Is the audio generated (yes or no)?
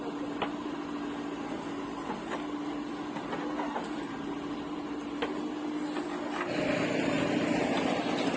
no